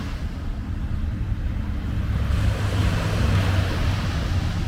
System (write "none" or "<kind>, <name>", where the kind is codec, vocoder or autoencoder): none